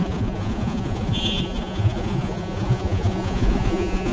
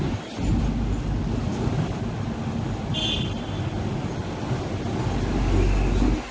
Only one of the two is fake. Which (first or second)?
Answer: first